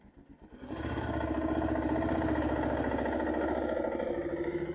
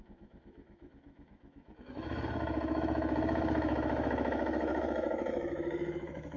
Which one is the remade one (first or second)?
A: second